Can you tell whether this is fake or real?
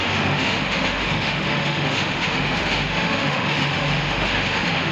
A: fake